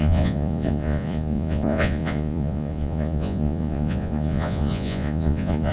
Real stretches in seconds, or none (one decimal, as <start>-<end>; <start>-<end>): none